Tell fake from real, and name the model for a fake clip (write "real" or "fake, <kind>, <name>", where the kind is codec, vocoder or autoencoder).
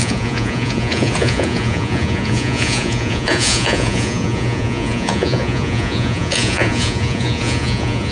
fake, vocoder, Vocos